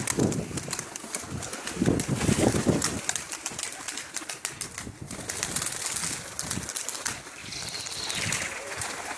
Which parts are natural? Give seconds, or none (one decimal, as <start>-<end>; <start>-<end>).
0.0-9.2